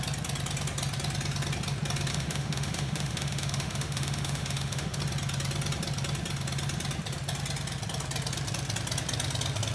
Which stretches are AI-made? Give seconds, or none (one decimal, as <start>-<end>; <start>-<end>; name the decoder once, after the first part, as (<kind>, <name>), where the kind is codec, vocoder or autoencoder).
2.1-5.0 (autoencoder, DAC-VAE)